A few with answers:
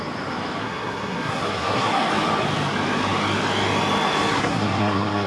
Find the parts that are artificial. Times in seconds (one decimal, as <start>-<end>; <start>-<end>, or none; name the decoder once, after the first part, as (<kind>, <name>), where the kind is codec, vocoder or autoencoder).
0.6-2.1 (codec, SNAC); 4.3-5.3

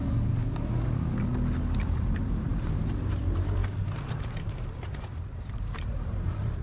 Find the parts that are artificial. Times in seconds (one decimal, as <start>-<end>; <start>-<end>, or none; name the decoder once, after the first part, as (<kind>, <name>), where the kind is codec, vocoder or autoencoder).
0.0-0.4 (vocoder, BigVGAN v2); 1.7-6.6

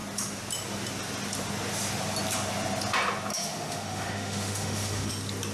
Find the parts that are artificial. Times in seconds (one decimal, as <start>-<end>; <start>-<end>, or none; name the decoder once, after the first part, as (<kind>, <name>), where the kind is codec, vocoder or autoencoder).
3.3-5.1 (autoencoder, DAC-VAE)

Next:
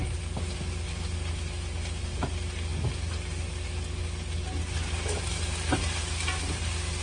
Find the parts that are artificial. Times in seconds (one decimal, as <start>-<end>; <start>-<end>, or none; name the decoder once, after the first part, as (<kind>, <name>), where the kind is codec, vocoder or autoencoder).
none

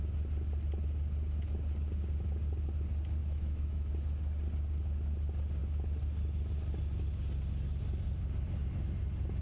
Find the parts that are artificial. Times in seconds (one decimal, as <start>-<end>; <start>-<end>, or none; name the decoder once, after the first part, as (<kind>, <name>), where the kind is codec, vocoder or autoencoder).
3.2-3.9 (autoencoder, DAC-VAE)

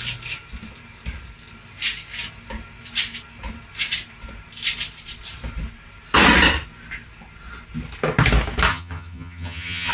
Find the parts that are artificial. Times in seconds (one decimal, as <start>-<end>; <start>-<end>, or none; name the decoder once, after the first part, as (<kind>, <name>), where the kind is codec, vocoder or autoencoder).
8.7-9.9 (vocoder, HiFi-GAN)

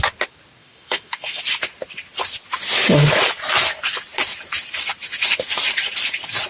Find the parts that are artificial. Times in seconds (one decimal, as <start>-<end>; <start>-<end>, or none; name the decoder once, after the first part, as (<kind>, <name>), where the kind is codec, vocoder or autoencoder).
0.6-1.4 (autoencoder, DAC-VAE)

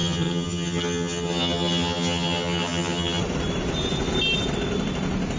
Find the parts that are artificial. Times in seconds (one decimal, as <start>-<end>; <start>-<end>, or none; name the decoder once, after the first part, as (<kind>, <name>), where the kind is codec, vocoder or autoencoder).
0.0-3.2 (vocoder, HiFi-GAN)